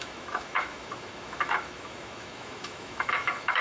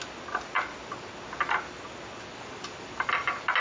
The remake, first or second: first